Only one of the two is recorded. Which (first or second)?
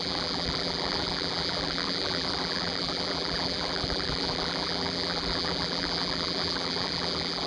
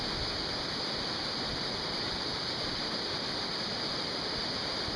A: second